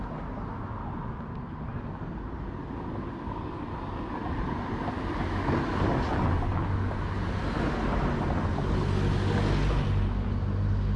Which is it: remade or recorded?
recorded